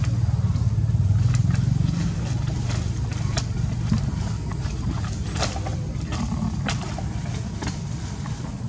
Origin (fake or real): real